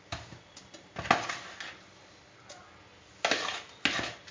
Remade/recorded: recorded